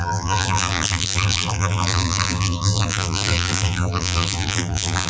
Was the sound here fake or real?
fake